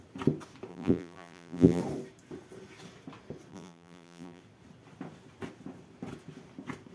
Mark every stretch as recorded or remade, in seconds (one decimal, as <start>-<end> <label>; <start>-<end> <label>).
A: 0.0-0.7 recorded; 0.7-1.8 remade; 1.8-3.5 recorded; 3.5-4.4 remade; 4.4-6.9 recorded